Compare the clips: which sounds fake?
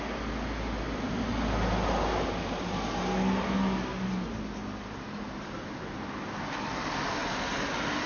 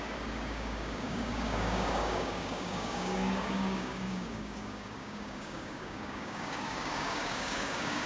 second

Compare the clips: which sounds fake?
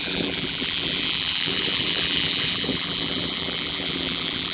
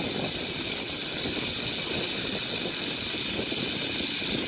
first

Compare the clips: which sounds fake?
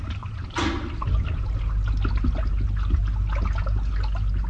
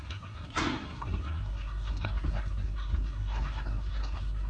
second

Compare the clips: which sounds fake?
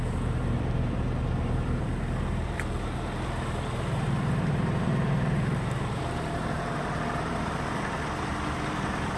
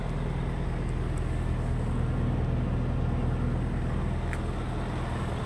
first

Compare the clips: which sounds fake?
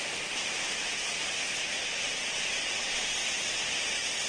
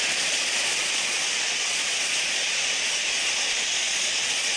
second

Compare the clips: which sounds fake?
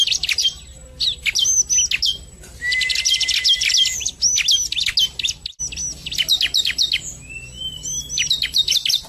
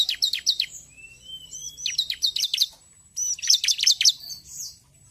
second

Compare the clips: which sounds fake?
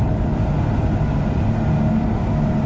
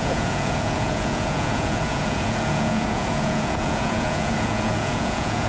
second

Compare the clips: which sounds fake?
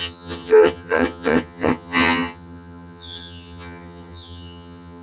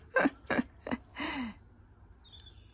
first